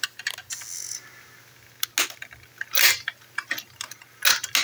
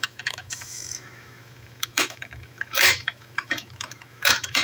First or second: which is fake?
second